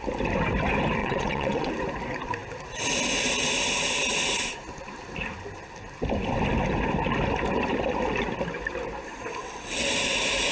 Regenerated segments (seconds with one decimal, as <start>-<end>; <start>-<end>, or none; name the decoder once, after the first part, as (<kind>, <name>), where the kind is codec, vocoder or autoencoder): 1.0-1.7 (vocoder, WaveNeXt); 9.4-9.9